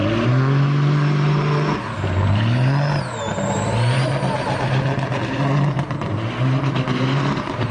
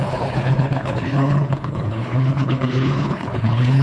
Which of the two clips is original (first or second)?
first